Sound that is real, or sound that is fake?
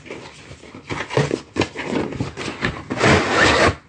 real